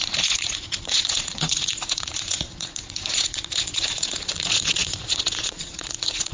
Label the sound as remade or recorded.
remade